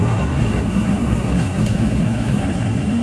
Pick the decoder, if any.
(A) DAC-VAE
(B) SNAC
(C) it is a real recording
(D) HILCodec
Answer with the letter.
B